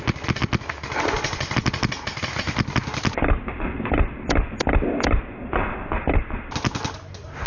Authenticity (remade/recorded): recorded